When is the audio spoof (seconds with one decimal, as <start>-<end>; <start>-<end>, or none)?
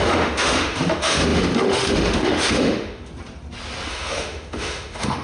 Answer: 0.0-3.1; 3.9-5.2